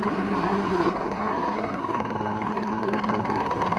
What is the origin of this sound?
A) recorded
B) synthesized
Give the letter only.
B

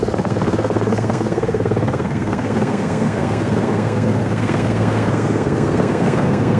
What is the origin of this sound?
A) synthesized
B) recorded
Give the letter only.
A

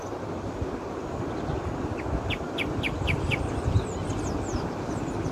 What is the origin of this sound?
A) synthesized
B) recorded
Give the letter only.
B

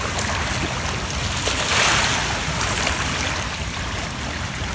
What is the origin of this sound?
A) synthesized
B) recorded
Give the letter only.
B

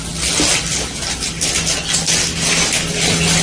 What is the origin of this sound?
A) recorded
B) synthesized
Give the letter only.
A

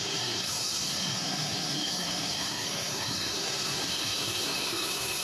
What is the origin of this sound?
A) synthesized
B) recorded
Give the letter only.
A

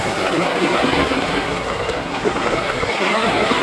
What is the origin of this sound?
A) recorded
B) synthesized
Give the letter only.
B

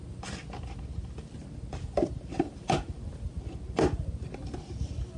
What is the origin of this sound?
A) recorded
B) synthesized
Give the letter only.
A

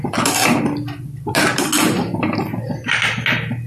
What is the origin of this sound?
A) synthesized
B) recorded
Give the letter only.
B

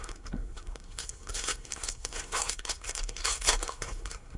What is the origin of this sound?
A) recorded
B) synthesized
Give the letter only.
B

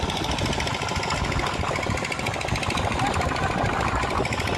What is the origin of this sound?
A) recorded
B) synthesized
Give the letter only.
A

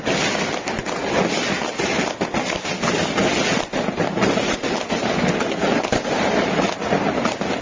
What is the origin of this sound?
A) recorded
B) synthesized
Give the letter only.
A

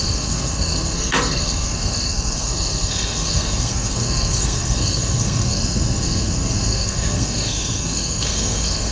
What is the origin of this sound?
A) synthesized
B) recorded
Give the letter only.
A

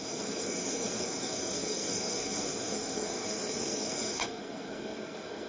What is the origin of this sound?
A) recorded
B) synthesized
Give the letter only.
B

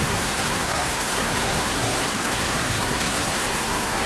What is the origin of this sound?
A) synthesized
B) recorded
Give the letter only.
A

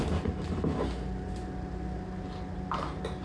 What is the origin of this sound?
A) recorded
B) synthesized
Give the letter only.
A